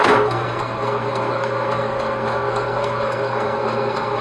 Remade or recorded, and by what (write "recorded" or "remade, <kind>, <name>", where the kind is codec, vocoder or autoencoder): remade, codec, SNAC